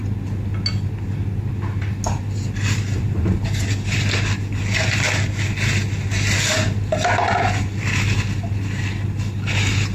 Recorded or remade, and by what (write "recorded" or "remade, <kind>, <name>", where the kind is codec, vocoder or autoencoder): recorded